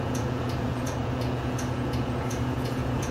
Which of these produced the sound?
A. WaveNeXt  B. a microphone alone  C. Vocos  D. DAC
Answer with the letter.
C